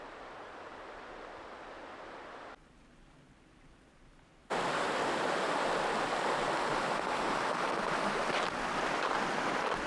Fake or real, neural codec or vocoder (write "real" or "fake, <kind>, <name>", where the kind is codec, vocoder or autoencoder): real